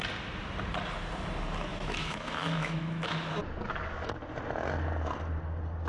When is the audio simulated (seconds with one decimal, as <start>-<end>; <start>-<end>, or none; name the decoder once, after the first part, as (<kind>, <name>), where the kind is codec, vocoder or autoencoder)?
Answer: 1.7-3.3 (autoencoder, DAC-VAE)